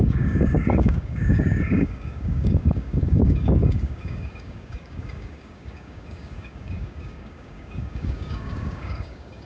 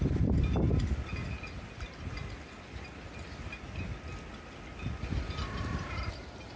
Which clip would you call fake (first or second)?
first